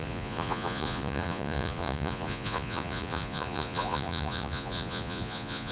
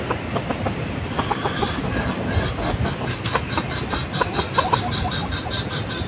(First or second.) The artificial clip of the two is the first